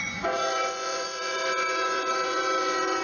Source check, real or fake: fake